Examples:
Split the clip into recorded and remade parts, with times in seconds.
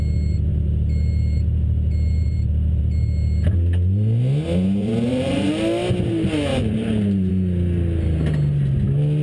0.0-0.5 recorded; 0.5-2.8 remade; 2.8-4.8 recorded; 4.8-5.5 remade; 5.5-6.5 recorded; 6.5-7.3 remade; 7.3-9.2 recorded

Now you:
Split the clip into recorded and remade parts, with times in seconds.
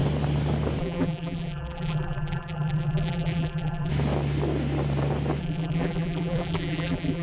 0.0-0.8 recorded; 0.8-3.9 remade; 3.9-5.4 recorded; 5.4-7.2 remade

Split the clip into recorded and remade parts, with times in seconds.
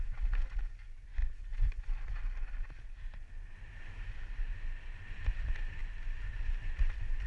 0.0-7.3 remade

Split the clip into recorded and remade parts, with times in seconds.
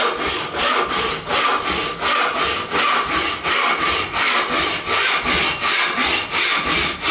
0.0-7.1 recorded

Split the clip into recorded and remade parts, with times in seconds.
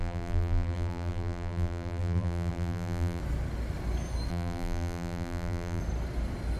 0.0-3.2 remade; 3.2-4.3 recorded; 4.3-5.8 remade; 5.8-6.6 recorded